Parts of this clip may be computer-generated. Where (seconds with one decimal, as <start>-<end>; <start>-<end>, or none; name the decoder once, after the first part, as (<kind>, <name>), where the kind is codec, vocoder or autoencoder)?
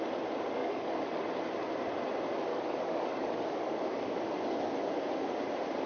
0.6-1.2 (codec, DAC); 2.5-4.2